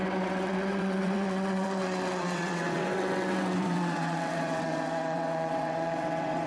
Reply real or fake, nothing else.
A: fake